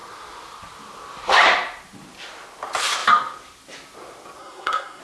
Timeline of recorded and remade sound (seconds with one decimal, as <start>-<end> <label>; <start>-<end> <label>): 0.0-4.4 recorded; 4.4-5.0 remade